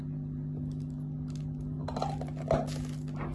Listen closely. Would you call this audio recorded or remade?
recorded